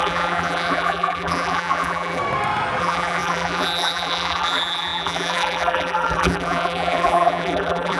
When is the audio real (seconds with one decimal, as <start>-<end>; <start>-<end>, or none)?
2.2-2.8